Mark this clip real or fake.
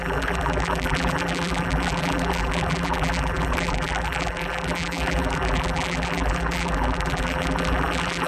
fake